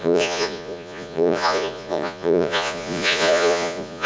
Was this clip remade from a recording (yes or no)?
yes